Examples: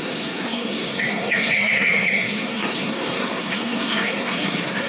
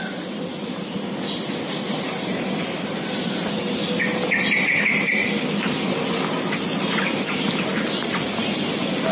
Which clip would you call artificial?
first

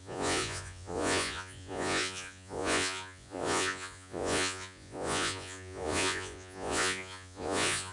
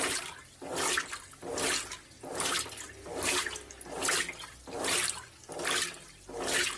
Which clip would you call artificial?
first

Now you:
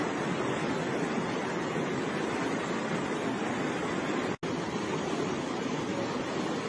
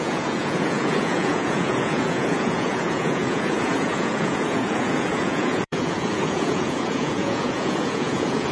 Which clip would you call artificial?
second